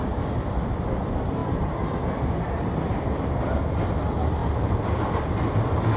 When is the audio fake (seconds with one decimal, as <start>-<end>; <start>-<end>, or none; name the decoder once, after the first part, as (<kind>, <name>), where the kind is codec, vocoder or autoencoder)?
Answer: 1.4-2.4 (vocoder, BigVGAN v2)